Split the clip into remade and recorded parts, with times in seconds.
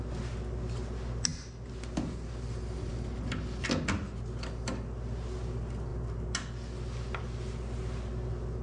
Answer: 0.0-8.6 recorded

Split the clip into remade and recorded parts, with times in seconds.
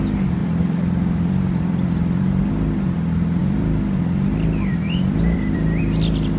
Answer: 0.0-0.4 recorded; 0.4-2.4 remade; 2.4-3.4 recorded; 3.4-5.8 remade; 5.8-6.4 recorded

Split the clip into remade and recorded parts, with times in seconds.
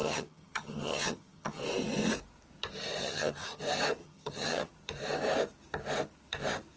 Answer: 0.0-1.6 remade; 1.6-3.0 recorded; 3.0-3.6 remade; 3.6-4.0 recorded; 4.0-4.7 remade; 4.7-6.8 recorded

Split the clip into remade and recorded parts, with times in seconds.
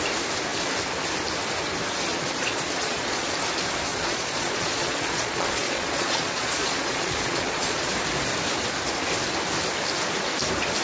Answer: 0.0-2.1 recorded; 2.1-3.3 remade; 3.3-3.9 recorded; 3.9-7.9 remade; 7.9-10.8 recorded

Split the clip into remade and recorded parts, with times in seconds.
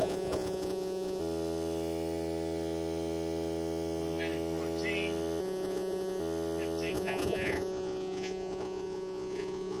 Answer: 0.0-1.2 remade; 1.2-5.4 recorded; 5.4-6.2 remade; 6.2-6.9 recorded; 6.9-9.8 remade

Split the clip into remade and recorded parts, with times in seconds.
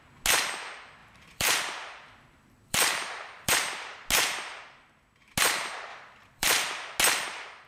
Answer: 0.0-1.0 recorded; 1.0-3.5 remade; 3.5-5.9 recorded; 5.9-7.0 remade; 7.0-7.7 recorded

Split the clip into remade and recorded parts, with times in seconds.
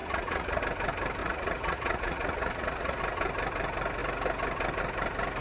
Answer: 0.0-0.6 remade; 0.6-1.2 recorded; 1.2-3.0 remade; 3.0-5.4 recorded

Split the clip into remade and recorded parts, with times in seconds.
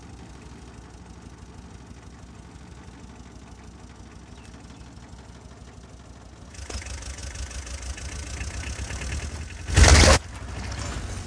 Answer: 0.0-11.3 recorded